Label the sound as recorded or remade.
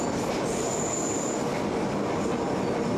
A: recorded